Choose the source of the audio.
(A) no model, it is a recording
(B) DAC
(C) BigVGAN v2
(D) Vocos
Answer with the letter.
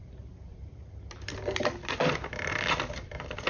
A